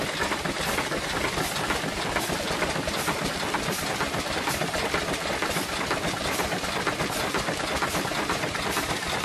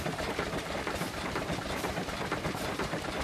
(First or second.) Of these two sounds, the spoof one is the second